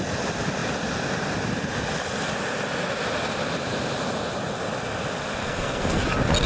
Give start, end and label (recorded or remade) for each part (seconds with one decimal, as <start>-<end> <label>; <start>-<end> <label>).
0.0-5.4 recorded; 5.4-6.0 remade; 6.0-6.5 recorded